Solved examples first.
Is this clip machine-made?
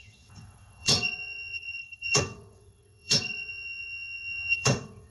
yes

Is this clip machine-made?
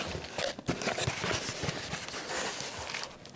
no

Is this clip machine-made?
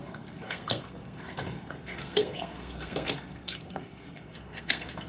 yes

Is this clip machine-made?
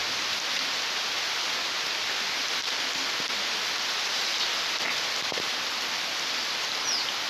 no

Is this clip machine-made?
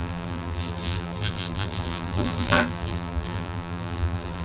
yes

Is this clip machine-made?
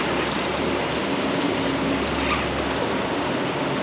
no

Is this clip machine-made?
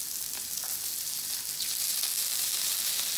no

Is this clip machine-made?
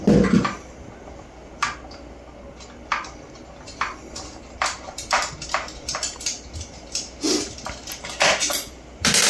no